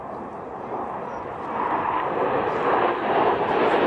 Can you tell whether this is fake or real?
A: real